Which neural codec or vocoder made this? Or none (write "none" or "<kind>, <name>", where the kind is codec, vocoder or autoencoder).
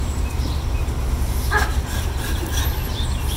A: vocoder, BigVGAN v2